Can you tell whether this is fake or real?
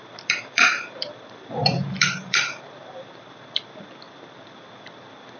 fake